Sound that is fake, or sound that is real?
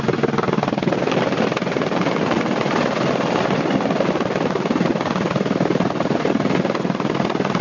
real